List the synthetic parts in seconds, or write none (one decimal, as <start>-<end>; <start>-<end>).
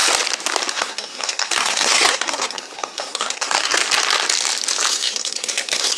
0.7-3.8; 4.9-6.0